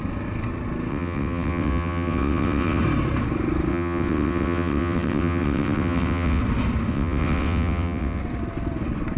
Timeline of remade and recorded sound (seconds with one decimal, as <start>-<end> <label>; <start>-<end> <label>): 0.0-0.9 recorded; 0.9-2.8 remade; 2.8-3.7 recorded; 3.7-6.4 remade; 6.4-6.9 recorded; 6.9-8.2 remade; 8.2-9.2 recorded

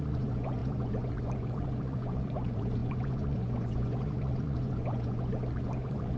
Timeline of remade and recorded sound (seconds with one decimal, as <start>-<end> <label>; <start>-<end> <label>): 0.0-6.2 remade

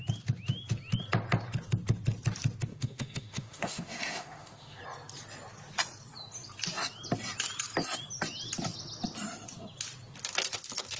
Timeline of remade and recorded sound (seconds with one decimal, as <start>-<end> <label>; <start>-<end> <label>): 0.0-2.7 recorded; 2.7-4.8 remade; 4.8-11.0 recorded

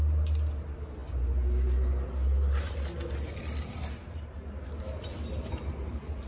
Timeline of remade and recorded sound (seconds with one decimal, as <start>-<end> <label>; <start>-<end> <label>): 0.0-6.3 recorded